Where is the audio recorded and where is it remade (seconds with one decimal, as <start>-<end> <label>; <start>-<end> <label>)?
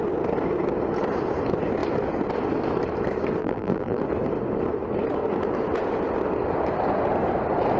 0.0-3.4 recorded; 3.4-4.0 remade; 4.0-7.8 recorded